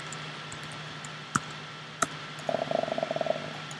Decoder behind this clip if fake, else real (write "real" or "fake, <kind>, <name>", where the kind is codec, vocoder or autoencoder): real